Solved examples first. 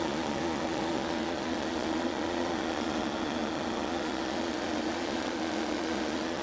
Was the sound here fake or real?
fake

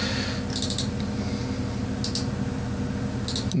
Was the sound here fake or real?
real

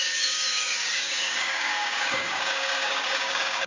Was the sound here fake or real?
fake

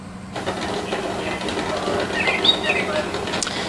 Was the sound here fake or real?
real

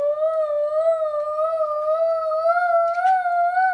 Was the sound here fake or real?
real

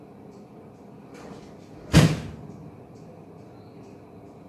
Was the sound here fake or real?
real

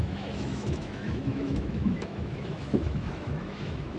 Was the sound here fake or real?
fake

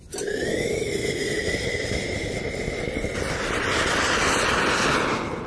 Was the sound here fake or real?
real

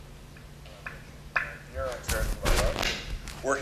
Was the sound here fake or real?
real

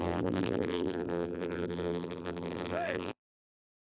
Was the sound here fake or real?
fake